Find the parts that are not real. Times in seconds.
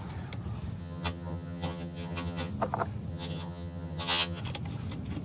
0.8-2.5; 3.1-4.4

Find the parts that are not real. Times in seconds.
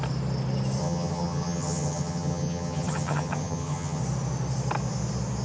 0.8-4.0